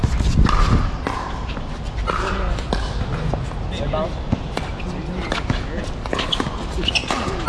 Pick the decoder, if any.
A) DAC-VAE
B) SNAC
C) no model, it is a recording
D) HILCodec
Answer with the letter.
C